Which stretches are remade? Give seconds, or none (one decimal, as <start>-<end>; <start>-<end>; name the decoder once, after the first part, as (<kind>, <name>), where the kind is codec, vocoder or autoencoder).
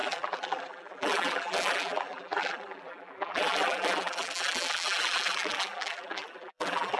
0.0-7.0 (vocoder, BigVGAN v2)